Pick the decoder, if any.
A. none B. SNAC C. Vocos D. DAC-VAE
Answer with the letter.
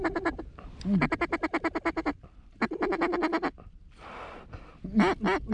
A